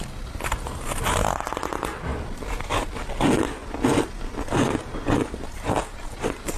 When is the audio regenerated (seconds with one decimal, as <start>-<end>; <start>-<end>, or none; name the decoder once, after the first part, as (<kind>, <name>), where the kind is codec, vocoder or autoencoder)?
none

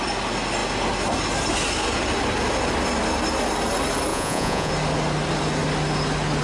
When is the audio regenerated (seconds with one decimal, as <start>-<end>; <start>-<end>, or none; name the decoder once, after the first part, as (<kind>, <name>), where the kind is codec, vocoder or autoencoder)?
4.1-4.7 (vocoder, Vocos)

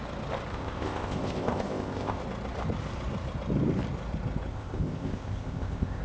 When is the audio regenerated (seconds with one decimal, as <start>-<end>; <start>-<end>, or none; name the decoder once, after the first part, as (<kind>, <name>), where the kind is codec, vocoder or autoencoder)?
0.5-2.2 (codec, ZipCodec); 4.5-6.0

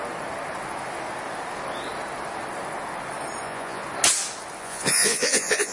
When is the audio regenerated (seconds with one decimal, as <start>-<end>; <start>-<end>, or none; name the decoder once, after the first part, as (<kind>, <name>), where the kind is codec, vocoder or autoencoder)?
3.4-3.8 (vocoder, Vocos); 4.6-5.7

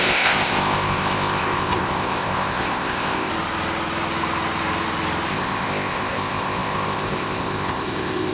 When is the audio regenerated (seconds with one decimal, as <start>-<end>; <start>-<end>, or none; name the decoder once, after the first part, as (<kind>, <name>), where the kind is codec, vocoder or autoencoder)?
0.0-3.3 (codec, ZipCodec); 5.3-8.3

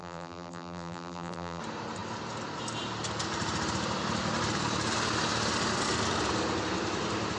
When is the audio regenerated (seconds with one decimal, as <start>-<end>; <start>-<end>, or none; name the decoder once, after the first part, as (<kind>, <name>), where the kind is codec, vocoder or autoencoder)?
0.0-1.6 (vocoder, BigVGAN v2)

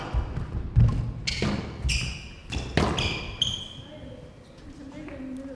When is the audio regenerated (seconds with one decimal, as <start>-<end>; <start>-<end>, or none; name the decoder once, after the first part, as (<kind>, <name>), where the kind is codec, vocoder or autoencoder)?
none